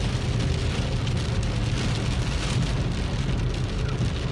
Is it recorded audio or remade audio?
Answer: recorded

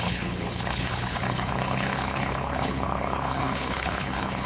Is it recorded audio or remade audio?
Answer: remade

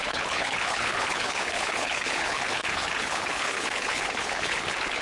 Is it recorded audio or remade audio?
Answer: remade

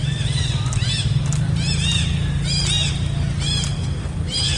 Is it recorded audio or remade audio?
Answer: recorded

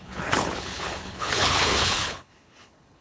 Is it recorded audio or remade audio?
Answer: remade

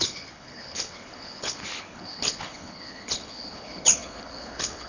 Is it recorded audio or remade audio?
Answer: remade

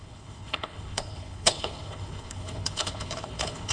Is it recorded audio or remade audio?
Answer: remade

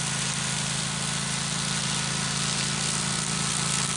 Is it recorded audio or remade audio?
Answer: recorded